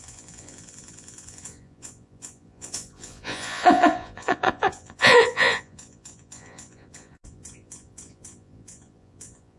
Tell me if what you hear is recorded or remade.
remade